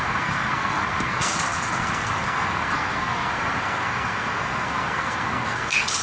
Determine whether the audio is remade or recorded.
remade